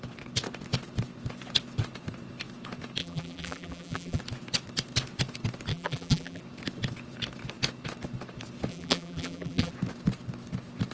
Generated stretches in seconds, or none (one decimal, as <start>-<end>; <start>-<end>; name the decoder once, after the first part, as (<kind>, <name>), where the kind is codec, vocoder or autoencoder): 3.0-4.2 (vocoder, BigVGAN v2); 5.7-6.4; 8.7-9.7